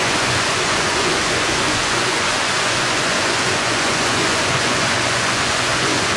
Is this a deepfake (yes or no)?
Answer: yes